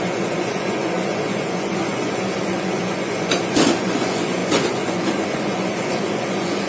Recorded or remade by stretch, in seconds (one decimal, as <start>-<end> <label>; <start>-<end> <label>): 0.0-6.7 remade